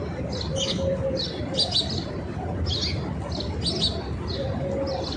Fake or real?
real